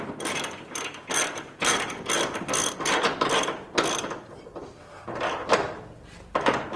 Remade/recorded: recorded